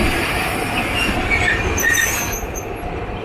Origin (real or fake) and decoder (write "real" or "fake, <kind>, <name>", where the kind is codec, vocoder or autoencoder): real